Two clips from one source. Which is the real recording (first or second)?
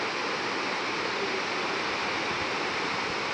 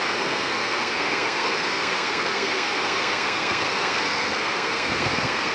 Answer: first